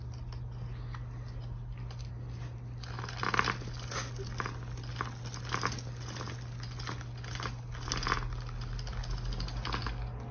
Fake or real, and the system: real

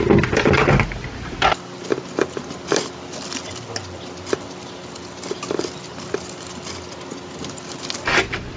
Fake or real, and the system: real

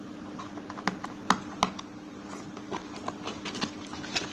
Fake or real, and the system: real